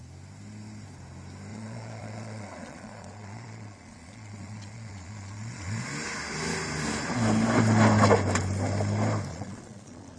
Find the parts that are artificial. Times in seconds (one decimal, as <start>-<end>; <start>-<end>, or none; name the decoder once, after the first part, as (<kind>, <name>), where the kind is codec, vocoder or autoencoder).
1.5-5.8 (vocoder, Vocos); 9.3-10.2